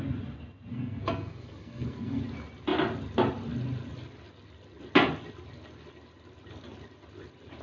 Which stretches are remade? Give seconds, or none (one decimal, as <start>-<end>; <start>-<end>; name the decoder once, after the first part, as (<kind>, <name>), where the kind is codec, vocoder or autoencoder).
0.7-2.2 (codec, SNAC)